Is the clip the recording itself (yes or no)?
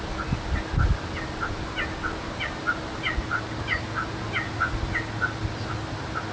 yes